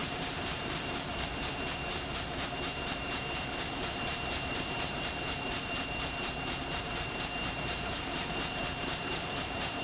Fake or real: fake